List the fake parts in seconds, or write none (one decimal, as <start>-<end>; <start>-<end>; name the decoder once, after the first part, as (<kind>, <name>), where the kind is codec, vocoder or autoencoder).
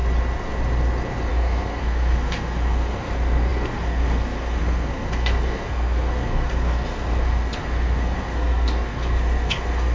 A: 1.3-9.9 (codec, SNAC)